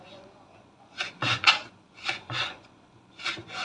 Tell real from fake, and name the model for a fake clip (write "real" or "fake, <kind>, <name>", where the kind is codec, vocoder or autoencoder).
fake, vocoder, Vocos